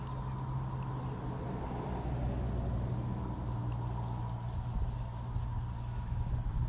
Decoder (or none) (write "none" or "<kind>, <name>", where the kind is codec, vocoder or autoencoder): none